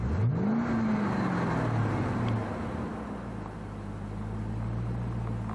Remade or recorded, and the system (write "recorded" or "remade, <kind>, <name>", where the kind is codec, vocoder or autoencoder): recorded